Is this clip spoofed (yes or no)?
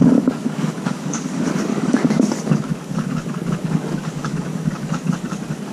yes